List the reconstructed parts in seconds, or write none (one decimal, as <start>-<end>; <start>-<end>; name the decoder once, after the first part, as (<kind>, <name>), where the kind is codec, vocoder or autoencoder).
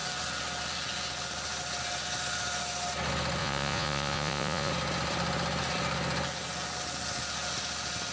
3.4-4.7 (vocoder, Vocos)